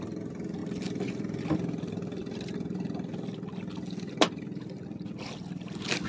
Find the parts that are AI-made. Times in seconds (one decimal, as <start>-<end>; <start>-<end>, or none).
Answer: none